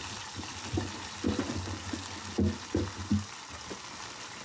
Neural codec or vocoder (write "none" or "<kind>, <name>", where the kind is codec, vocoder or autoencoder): none